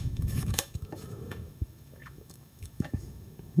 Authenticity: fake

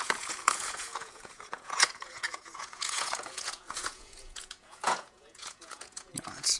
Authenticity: fake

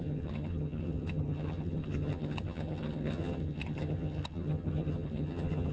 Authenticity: fake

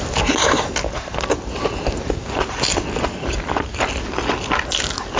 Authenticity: real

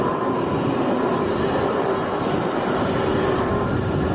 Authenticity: real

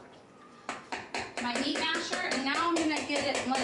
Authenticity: fake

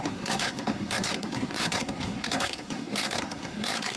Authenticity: fake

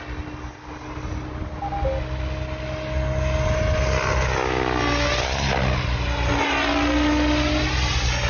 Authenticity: real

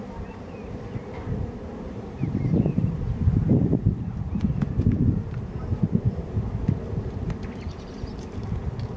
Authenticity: fake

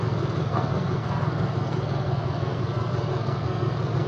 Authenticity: fake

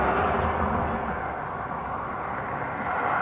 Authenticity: real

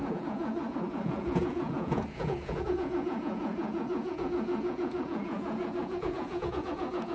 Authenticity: fake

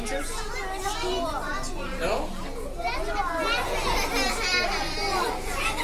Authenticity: real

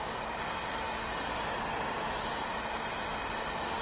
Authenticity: real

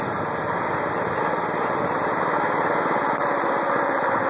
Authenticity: real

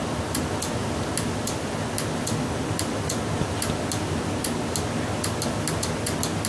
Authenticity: real